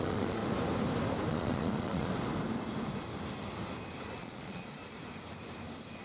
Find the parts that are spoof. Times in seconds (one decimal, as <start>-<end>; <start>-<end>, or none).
0.0-0.4; 1.3-2.1; 4.2-4.8